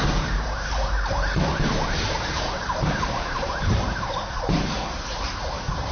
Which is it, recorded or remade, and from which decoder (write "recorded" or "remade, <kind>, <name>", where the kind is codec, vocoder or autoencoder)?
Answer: remade, vocoder, BigVGAN v2